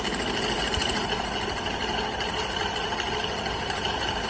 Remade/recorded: recorded